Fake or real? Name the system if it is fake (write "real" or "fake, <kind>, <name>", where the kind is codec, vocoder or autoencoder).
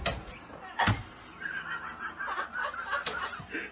real